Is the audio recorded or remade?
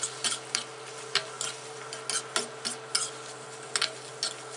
recorded